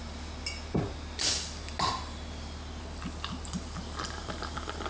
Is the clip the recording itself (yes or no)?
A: yes